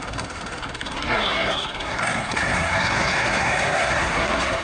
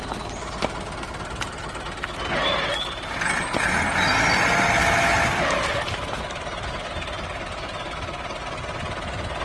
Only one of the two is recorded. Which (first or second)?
second